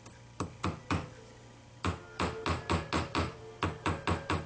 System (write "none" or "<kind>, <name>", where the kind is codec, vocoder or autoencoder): none